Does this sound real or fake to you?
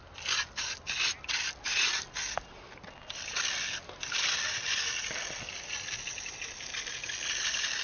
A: real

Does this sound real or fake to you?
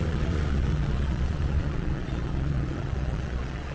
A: fake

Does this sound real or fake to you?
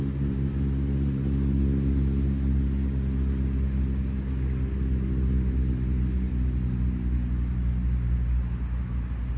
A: real